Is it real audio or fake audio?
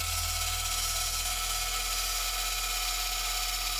real